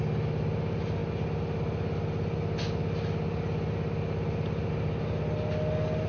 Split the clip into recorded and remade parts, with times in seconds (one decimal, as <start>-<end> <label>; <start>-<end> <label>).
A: 0.0-6.1 recorded